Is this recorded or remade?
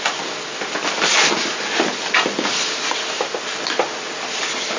recorded